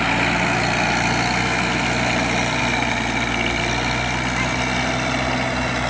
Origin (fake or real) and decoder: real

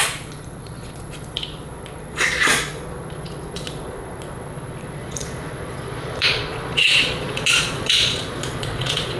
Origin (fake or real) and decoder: fake, vocoder, Vocos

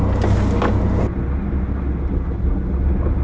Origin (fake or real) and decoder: real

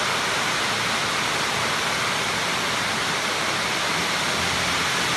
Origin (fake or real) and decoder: real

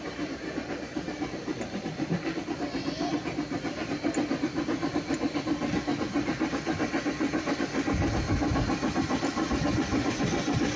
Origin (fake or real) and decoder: real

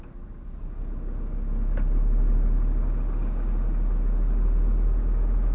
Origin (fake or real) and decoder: real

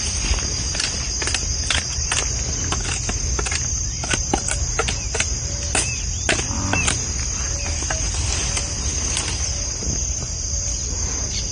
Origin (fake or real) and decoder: real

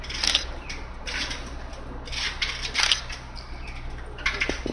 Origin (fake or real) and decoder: real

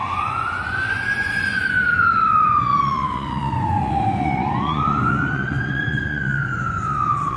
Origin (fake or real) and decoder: fake, vocoder, Vocos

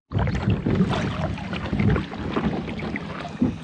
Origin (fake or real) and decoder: real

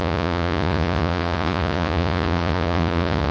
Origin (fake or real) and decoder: fake, vocoder, Vocos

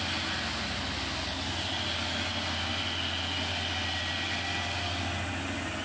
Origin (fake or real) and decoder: real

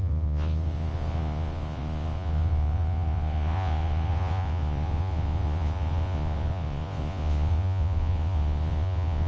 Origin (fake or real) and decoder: fake, vocoder, Vocos